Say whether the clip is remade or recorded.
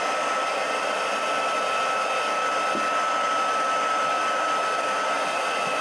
recorded